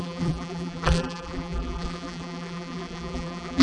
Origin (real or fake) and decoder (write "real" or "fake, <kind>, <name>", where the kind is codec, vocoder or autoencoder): fake, vocoder, BigVGAN v2